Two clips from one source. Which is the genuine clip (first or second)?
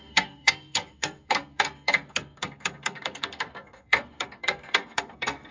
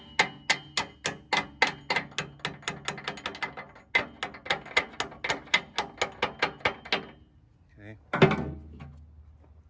second